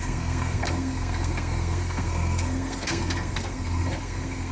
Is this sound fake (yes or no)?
yes